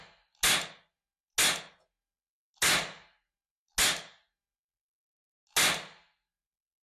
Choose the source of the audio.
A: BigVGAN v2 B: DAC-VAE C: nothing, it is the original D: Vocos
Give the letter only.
C